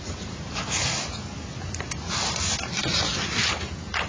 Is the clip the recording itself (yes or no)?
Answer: yes